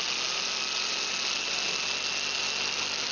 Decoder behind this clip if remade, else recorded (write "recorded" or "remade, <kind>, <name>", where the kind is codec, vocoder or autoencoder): recorded